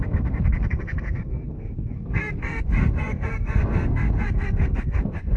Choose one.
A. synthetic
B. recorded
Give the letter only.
A